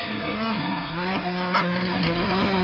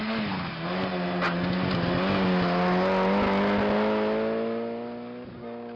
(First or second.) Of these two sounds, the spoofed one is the first